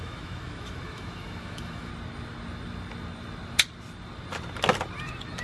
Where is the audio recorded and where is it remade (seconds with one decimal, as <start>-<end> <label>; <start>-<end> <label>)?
0.0-1.9 remade; 1.9-5.4 recorded